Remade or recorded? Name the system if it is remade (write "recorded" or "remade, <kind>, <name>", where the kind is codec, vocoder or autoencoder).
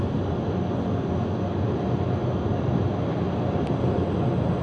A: recorded